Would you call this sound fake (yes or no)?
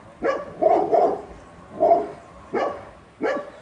no